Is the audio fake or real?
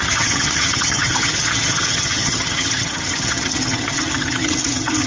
fake